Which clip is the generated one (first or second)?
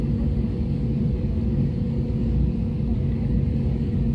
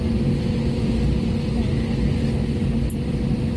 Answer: first